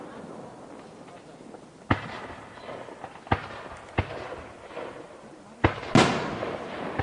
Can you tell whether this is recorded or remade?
recorded